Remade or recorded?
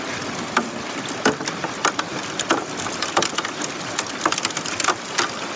recorded